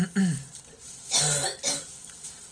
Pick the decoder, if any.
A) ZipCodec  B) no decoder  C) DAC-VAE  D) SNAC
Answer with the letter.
B